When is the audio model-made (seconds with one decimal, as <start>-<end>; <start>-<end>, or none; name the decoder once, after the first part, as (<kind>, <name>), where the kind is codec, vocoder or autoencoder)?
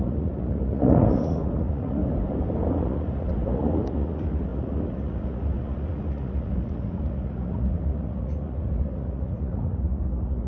0.0-2.0 (vocoder, Vocos); 2.7-10.5